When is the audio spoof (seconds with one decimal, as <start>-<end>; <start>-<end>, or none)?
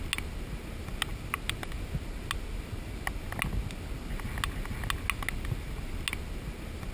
none